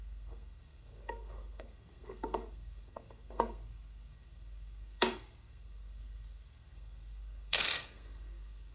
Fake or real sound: fake